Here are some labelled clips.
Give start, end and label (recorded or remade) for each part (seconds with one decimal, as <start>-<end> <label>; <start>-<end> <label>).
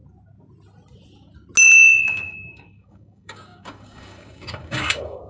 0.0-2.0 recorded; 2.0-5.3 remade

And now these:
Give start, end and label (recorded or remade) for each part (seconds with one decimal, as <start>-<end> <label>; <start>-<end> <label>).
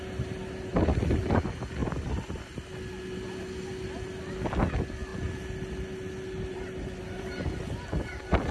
0.0-8.5 recorded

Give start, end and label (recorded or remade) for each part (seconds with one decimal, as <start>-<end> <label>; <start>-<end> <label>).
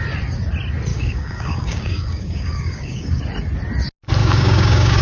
0.0-0.9 recorded; 0.9-3.2 remade; 3.2-4.2 recorded; 4.2-5.0 remade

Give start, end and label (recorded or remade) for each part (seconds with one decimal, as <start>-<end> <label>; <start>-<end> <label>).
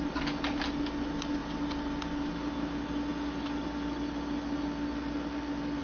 0.0-5.8 recorded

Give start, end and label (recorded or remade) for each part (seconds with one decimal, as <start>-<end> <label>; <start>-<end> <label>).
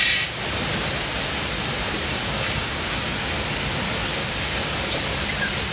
0.0-2.1 recorded; 2.1-3.1 remade; 3.1-4.2 recorded; 4.2-5.0 remade; 5.0-5.7 recorded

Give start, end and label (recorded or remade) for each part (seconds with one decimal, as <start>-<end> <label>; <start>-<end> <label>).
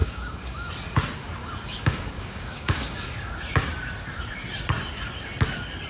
0.0-0.7 remade; 0.7-1.4 recorded; 1.4-3.4 remade; 3.4-5.9 recorded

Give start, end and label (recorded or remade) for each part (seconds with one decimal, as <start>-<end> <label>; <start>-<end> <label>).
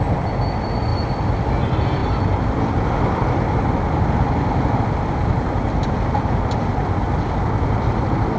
0.0-8.4 recorded